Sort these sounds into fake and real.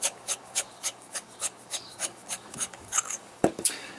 fake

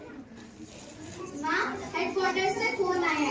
real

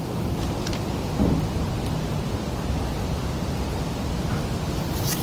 real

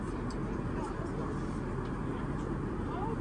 real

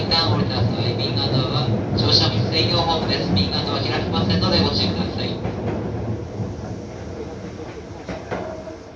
real